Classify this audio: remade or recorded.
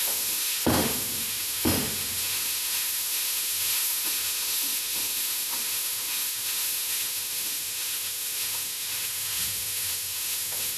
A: remade